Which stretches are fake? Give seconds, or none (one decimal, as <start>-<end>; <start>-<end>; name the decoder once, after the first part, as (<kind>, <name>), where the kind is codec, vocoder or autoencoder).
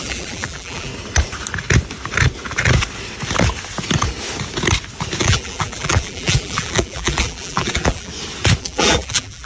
0.0-0.9 (vocoder, BigVGAN v2); 5.2-8.1; 8.6-9.5